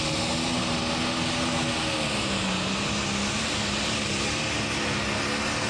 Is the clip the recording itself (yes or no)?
yes